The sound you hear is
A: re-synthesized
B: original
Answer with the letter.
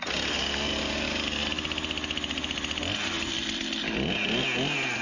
B